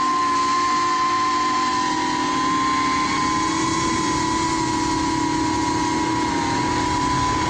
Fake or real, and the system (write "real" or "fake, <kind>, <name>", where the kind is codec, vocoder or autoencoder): real